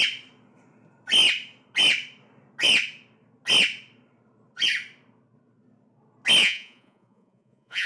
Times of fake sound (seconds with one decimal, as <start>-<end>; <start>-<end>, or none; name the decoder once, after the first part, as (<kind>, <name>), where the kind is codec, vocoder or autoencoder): 6.4-7.9 (vocoder, Vocos)